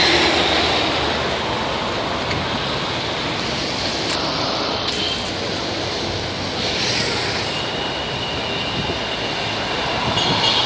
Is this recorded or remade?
recorded